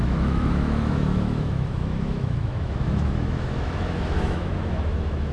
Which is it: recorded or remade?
remade